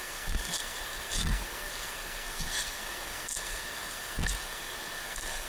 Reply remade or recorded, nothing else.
remade